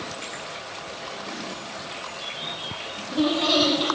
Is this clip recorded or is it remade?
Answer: recorded